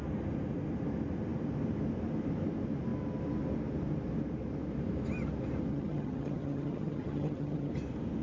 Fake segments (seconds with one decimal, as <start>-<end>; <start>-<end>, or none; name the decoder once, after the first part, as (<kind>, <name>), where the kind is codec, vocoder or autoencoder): 5.7-7.7 (vocoder, HiFi-GAN)